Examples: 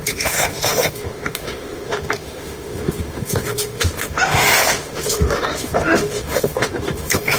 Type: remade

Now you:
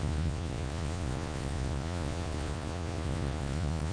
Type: remade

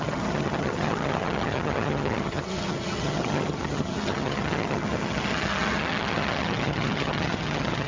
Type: remade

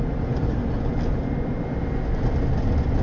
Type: recorded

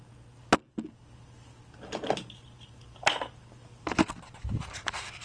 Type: recorded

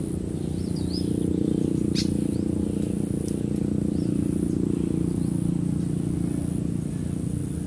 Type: recorded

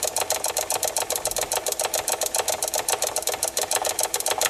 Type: remade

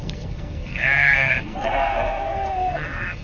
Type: remade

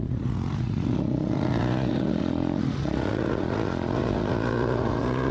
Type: remade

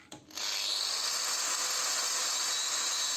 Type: recorded